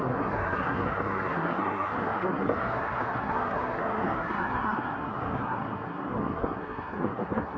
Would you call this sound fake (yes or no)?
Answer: yes